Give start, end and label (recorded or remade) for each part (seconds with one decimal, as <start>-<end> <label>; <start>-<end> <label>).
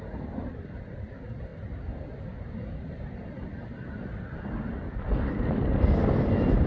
0.0-6.7 recorded